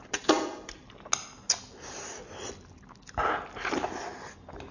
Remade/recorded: recorded